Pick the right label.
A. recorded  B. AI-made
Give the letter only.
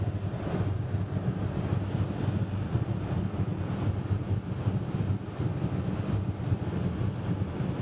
A